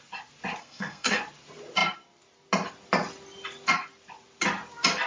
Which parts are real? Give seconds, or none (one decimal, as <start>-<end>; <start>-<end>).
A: 0.0-0.6; 1.2-5.1